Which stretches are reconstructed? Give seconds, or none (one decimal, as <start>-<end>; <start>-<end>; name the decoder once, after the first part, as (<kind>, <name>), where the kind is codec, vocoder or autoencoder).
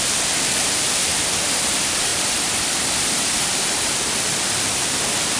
2.1-5.4 (vocoder, BigVGAN v2)